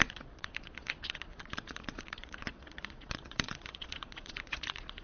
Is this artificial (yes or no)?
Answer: yes